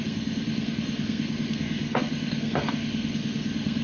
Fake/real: fake